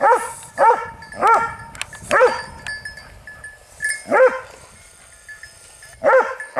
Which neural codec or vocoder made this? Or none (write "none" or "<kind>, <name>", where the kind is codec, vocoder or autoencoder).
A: none